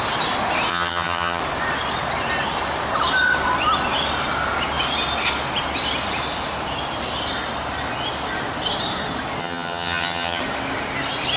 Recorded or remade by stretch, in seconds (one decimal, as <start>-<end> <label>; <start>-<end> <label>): 0.0-0.7 recorded; 0.7-1.4 remade; 1.4-9.4 recorded; 9.4-10.4 remade; 10.4-11.4 recorded